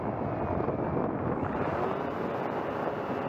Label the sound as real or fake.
real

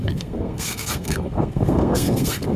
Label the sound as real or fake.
fake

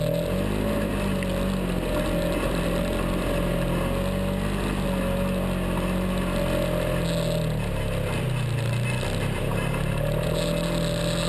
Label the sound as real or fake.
real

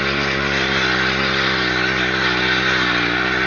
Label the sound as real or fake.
real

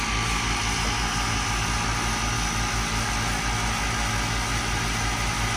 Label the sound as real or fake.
real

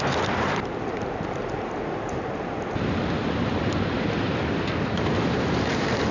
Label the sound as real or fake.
real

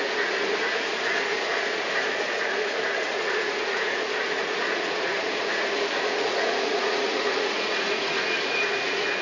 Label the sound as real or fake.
fake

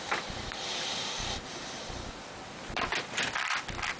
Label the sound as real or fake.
real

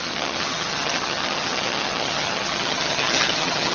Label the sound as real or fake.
fake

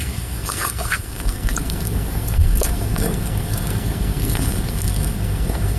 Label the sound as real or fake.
fake